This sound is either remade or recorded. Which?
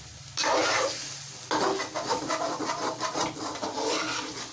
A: recorded